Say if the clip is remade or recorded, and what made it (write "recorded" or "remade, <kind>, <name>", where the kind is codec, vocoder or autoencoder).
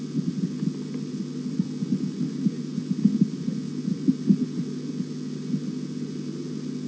recorded